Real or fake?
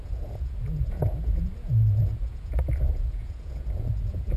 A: fake